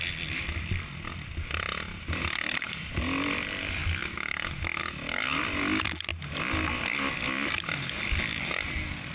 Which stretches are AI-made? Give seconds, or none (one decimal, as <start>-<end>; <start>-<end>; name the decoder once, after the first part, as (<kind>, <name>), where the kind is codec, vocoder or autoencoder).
none